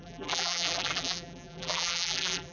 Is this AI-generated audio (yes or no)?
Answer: yes